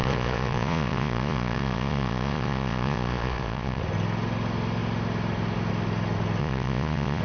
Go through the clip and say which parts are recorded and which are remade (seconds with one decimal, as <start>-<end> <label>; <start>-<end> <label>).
0.0-3.8 remade; 3.8-6.4 recorded; 6.4-7.2 remade